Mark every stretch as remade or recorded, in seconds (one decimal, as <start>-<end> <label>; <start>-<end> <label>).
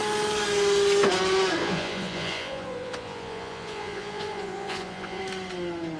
0.0-1.6 recorded; 1.6-5.2 remade; 5.2-6.0 recorded